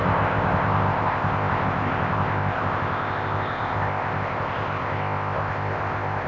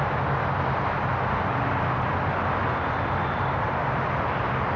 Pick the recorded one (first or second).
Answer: second